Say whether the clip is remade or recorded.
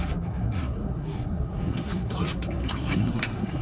remade